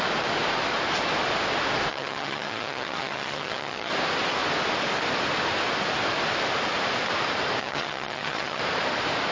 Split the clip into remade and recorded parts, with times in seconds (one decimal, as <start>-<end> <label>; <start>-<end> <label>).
0.0-1.9 recorded; 1.9-3.9 remade; 3.9-7.6 recorded; 7.6-8.6 remade; 8.6-9.3 recorded